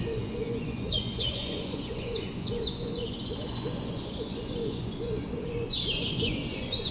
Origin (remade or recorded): remade